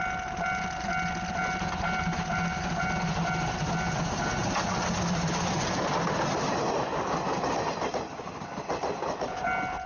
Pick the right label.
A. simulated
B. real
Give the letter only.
B